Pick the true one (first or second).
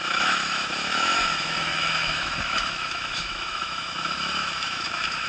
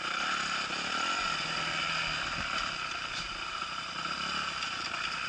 second